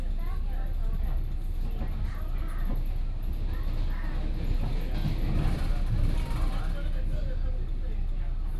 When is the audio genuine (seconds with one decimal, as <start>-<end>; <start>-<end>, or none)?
0.0-8.6